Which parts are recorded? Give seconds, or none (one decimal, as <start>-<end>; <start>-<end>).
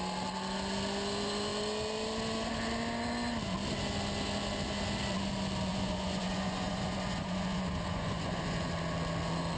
0.0-5.7; 8.7-9.6